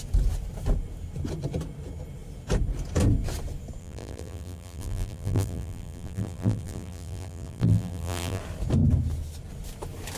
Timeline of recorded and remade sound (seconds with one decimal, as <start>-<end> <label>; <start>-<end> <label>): 0.0-3.8 recorded; 3.8-8.4 remade; 8.4-10.2 recorded